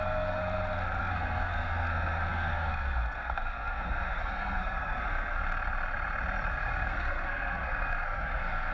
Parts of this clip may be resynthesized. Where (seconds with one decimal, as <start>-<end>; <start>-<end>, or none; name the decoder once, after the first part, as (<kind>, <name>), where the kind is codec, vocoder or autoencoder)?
0.0-0.4 (codec, SNAC); 1.0-5.4; 6.5-8.7